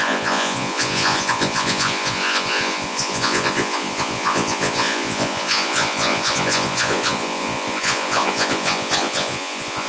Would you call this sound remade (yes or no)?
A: yes